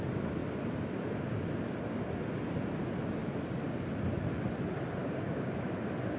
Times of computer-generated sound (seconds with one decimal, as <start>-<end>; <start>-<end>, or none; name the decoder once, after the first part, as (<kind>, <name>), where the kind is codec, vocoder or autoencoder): 5.0-5.7 (codec, DAC)